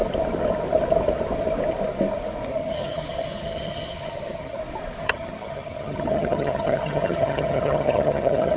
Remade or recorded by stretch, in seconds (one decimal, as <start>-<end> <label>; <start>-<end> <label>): 0.0-2.5 recorded; 2.5-4.6 remade; 4.6-5.0 recorded; 5.0-8.6 remade